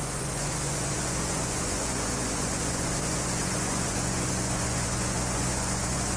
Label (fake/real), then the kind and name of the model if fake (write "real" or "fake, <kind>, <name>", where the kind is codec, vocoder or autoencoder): fake, vocoder, Vocos